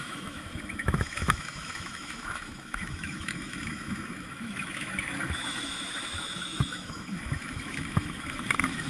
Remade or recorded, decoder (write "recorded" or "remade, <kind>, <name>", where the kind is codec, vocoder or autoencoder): remade, autoencoder, DAC-VAE